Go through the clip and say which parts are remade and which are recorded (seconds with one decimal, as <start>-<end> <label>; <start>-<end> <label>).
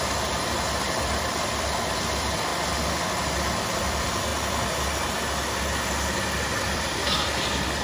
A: 0.0-2.5 remade; 2.5-3.6 recorded; 3.6-4.3 remade; 4.3-6.6 recorded; 6.6-7.8 remade